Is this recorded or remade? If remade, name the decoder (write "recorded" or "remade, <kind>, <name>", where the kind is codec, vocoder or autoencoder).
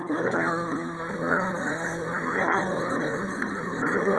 remade, codec, SNAC